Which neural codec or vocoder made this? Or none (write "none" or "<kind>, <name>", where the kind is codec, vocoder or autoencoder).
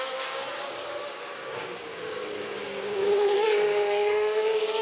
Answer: codec, DAC